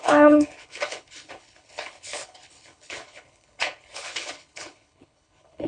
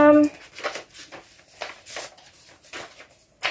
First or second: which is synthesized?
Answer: first